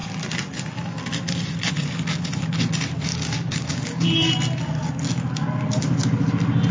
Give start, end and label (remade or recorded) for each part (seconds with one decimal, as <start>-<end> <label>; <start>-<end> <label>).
0.0-3.1 recorded; 3.1-4.3 remade; 4.3-6.7 recorded